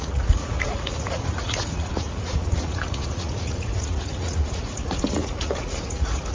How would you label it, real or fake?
fake